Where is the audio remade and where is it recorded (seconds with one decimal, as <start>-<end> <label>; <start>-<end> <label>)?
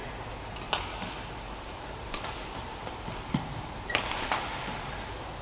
0.0-1.1 recorded; 1.1-5.4 remade